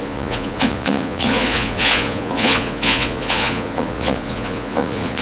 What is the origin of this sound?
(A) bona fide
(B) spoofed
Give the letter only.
B